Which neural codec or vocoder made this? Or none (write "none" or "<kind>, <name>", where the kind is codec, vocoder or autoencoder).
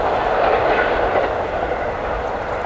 none